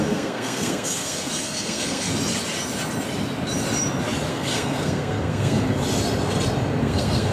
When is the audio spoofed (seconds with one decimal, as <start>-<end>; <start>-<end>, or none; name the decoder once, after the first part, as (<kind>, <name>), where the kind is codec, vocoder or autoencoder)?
0.0-2.1 (codec, SNAC); 4.3-5.8; 6.8-7.3